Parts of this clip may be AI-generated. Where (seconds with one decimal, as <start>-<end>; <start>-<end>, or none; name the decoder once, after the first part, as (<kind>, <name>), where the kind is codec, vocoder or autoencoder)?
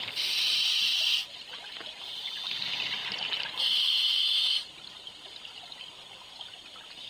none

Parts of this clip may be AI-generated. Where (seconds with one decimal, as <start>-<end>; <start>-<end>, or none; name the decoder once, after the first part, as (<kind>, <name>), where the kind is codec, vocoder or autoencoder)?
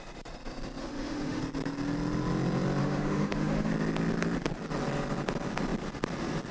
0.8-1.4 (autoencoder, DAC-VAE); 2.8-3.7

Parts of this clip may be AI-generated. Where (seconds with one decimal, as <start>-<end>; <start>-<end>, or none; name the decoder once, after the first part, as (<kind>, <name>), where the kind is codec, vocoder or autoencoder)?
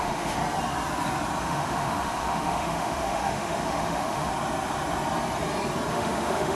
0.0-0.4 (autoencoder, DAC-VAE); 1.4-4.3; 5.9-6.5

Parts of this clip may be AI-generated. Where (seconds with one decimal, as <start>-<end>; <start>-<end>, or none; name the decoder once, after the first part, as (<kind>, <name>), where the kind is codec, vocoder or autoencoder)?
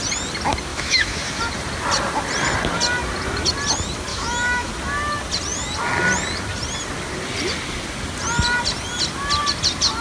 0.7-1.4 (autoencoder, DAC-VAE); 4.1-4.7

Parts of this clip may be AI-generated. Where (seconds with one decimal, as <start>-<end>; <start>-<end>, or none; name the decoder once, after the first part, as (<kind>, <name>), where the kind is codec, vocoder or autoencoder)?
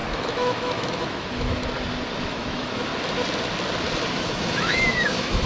0.0-1.6 (autoencoder, DAC-VAE); 2.2-2.9; 4.2-5.5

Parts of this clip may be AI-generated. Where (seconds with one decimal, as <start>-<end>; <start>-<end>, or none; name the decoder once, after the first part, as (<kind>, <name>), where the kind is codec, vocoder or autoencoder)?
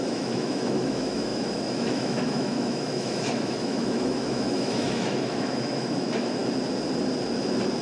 0.0-6.4 (autoencoder, DAC-VAE)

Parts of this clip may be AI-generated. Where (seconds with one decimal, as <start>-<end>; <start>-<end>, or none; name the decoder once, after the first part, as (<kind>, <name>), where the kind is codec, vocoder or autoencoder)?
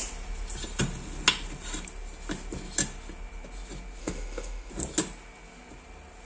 4.0-4.7 (autoencoder, DAC-VAE)